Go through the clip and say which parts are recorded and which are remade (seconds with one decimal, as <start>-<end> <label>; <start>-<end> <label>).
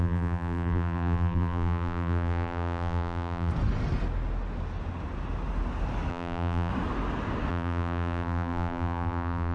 0.0-3.5 remade; 3.5-6.1 recorded; 6.1-6.7 remade; 6.7-7.5 recorded; 7.5-9.5 remade